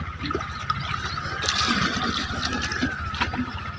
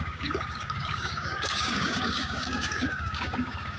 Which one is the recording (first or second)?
first